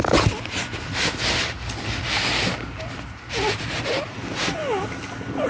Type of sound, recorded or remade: recorded